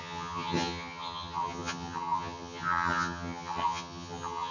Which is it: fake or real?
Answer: fake